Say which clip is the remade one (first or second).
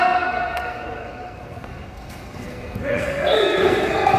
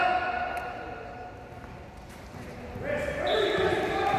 first